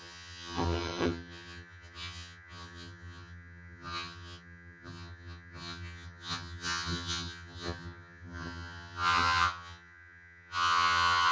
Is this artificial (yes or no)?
yes